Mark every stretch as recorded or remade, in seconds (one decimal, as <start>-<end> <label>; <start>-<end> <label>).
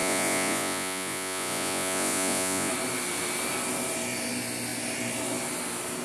0.0-2.7 remade; 2.7-6.0 recorded